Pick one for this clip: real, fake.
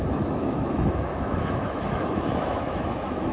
fake